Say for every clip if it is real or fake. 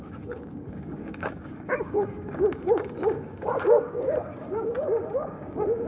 fake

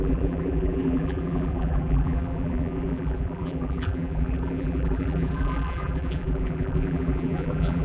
fake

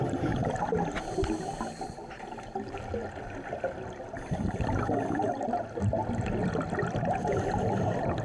real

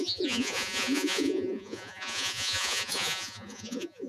fake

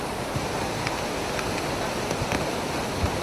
real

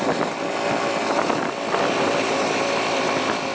real